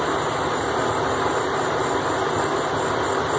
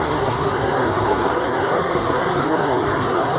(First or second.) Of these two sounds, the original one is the first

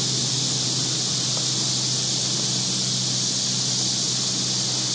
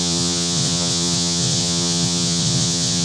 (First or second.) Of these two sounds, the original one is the first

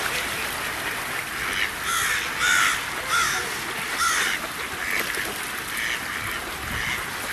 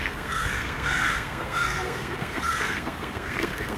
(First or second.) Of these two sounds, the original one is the first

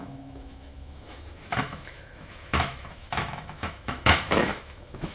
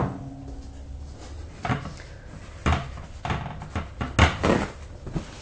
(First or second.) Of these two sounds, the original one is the second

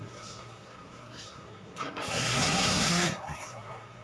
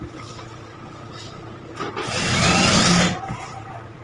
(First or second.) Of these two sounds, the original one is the second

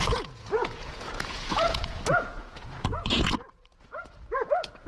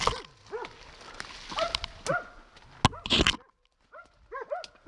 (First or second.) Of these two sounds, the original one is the second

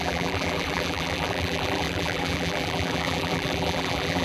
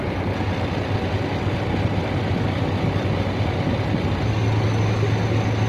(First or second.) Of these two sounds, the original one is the second